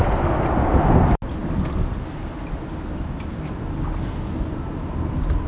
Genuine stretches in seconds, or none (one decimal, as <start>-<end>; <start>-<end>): 0.0-5.5